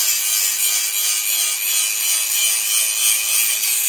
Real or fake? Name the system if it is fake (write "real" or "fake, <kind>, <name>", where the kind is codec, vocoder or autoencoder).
real